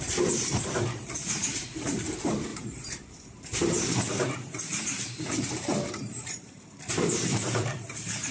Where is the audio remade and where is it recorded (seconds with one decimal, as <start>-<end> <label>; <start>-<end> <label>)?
0.0-8.3 remade